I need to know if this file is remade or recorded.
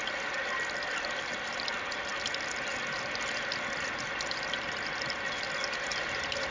recorded